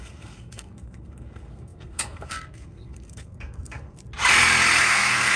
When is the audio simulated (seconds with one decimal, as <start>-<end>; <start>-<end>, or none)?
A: 0.0-4.0; 4.8-5.4